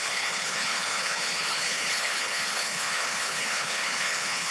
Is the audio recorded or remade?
remade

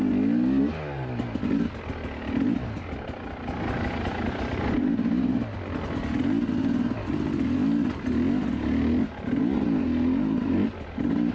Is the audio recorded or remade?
recorded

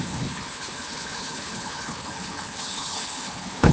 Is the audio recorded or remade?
remade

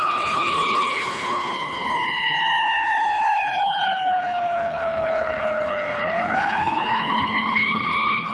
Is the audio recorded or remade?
remade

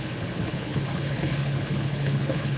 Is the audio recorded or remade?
remade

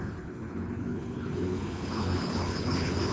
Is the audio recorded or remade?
remade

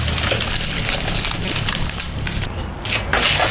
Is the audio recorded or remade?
recorded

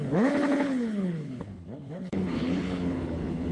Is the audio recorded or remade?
remade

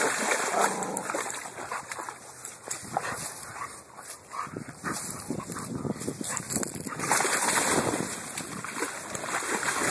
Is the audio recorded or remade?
recorded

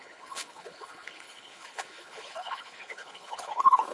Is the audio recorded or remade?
remade